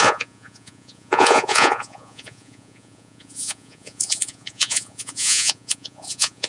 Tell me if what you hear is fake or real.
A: fake